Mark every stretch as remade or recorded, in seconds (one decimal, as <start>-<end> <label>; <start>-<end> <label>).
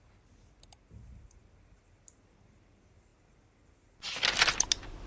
0.0-5.1 recorded